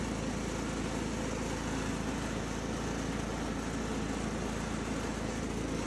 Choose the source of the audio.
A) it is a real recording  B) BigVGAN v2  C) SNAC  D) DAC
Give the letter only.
A